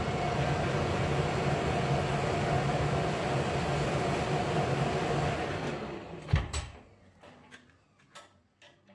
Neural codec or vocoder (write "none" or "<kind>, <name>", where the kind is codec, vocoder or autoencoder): none